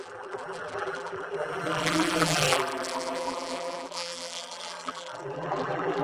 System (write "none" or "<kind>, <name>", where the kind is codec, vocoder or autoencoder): vocoder, BigVGAN v2